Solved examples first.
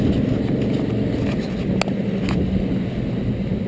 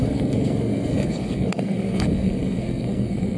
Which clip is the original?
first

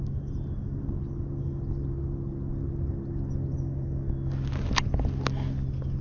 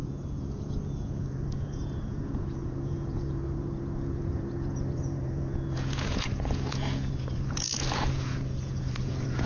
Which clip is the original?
first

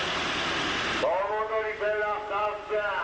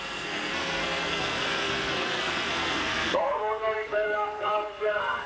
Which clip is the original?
first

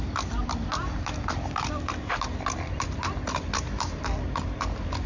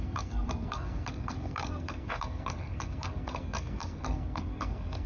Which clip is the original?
first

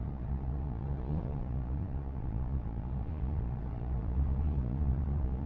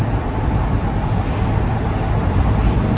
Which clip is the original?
second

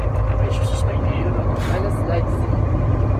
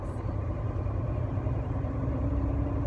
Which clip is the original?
first